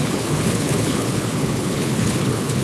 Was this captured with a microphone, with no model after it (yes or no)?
no